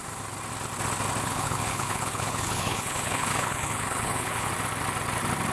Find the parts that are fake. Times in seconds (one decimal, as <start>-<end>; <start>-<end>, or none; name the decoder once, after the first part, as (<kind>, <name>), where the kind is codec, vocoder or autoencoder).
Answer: 1.2-4.5 (codec, HILCodec)